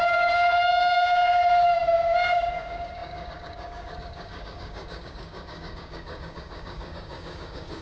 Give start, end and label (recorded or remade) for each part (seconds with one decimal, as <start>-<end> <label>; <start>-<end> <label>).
0.0-7.8 remade